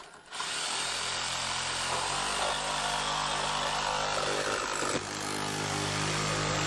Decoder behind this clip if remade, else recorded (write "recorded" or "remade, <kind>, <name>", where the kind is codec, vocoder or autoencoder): recorded